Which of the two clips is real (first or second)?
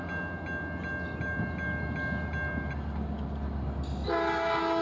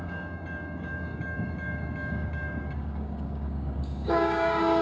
first